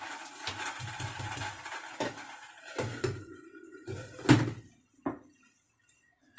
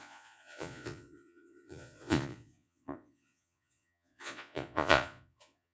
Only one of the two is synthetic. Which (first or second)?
second